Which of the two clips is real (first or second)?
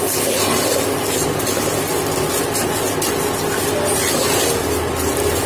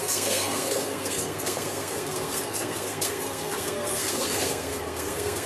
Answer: first